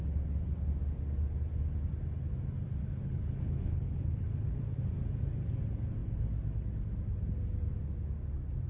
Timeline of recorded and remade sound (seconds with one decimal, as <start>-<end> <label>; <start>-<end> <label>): 0.0-2.8 recorded; 2.8-4.6 remade; 4.6-8.7 recorded